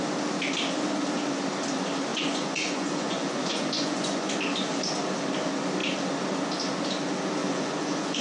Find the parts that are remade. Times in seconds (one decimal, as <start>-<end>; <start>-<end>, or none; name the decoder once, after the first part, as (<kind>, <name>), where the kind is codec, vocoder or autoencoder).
2.1-4.3 (vocoder, Vocos); 7.4-8.2